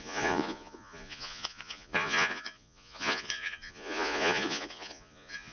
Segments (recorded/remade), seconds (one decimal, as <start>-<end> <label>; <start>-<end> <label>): 0.0-5.5 remade